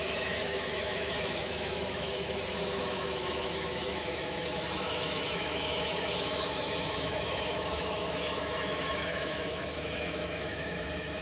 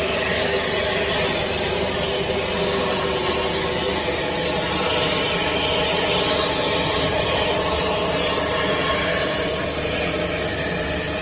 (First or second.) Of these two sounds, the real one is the second